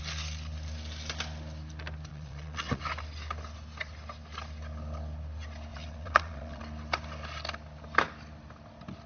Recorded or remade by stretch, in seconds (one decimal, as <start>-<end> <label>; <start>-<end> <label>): 0.0-2.1 recorded; 2.1-2.8 remade; 2.8-5.7 recorded; 5.7-6.6 remade; 6.6-9.1 recorded